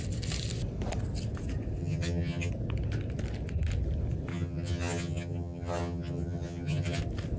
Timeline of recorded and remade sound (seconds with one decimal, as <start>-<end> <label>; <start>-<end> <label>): 0.0-1.8 recorded; 1.8-2.5 remade; 2.5-4.3 recorded; 4.3-7.0 remade; 7.0-7.4 recorded

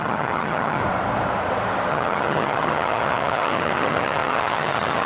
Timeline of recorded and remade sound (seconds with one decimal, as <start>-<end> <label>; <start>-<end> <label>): 0.0-0.8 remade; 0.8-1.9 recorded; 1.9-5.1 remade

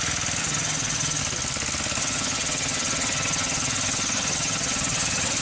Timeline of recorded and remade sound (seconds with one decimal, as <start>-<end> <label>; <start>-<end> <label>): 0.0-0.4 recorded; 0.4-1.2 remade; 1.2-2.0 recorded; 2.0-5.4 remade

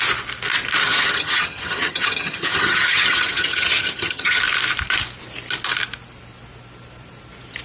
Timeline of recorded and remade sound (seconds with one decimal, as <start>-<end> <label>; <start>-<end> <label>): 0.0-0.8 recorded; 0.8-4.4 remade; 4.4-7.6 recorded